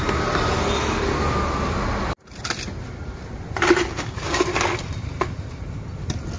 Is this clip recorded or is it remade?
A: recorded